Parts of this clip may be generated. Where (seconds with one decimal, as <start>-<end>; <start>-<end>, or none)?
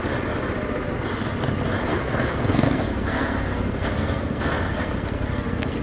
1.9-5.8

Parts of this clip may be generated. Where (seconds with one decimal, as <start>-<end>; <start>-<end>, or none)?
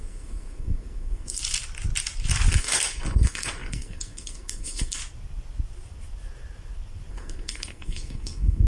0.0-1.4; 2.5-5.0; 7.1-8.7